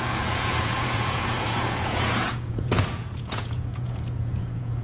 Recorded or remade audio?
remade